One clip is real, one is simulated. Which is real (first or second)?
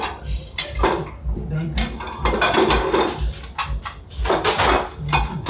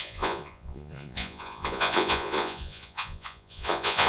first